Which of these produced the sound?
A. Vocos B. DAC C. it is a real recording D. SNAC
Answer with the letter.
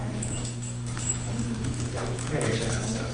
B